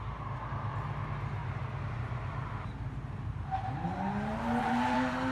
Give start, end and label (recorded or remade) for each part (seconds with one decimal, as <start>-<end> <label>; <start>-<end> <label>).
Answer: 0.0-5.3 remade